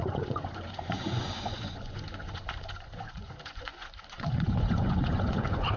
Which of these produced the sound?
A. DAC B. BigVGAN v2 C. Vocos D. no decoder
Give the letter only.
C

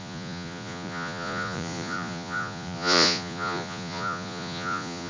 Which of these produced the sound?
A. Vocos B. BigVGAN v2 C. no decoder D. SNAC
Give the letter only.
A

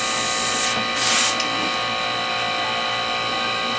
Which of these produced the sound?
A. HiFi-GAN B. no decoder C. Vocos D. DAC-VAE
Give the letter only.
B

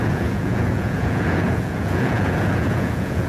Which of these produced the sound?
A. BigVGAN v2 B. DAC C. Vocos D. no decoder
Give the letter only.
C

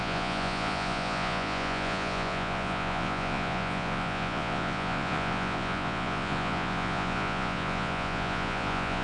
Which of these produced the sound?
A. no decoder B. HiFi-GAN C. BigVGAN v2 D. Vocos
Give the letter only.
D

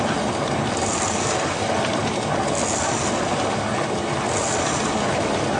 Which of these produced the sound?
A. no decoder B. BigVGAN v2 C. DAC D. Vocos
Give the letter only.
A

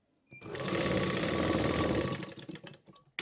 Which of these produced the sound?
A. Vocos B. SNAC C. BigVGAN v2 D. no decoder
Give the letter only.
D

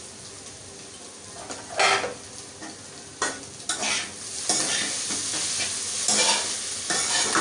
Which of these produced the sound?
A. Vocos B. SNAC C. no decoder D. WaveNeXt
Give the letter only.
C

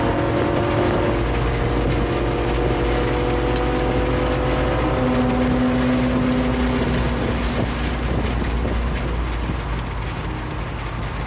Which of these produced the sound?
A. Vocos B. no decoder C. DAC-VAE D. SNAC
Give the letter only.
B